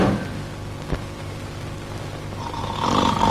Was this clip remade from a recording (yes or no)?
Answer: no